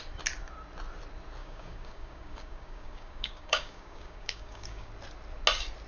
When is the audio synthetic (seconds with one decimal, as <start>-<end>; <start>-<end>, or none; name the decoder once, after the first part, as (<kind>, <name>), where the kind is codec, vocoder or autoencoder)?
1.4-4.9 (codec, DAC)